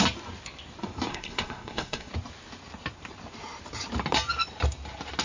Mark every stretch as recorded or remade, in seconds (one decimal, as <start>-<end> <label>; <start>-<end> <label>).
0.0-1.1 recorded; 1.1-2.1 remade; 2.1-5.2 recorded

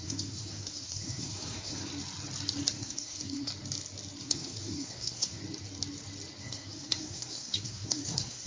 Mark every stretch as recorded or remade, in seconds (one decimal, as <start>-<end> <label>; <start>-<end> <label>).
0.0-1.9 remade; 1.9-2.7 recorded; 2.7-3.5 remade; 3.5-4.2 recorded; 4.2-5.4 remade; 5.4-6.4 recorded; 6.4-8.5 remade